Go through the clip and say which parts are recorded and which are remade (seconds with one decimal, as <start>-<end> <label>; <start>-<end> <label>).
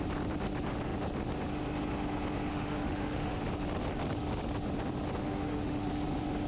0.0-2.5 recorded; 2.5-3.4 remade; 3.4-5.2 recorded; 5.2-5.9 remade; 5.9-6.5 recorded